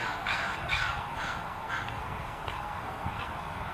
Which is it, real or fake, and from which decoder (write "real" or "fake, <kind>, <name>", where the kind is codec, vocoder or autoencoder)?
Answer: fake, codec, SNAC